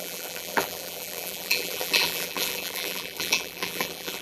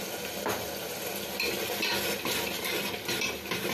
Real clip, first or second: second